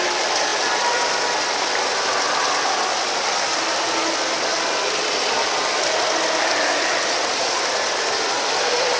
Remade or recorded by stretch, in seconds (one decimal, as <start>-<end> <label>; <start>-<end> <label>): 0.0-9.0 recorded